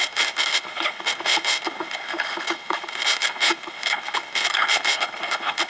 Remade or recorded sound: remade